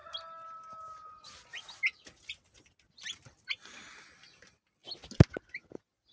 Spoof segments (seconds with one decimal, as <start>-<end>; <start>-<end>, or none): none